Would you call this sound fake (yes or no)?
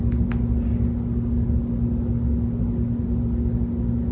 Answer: no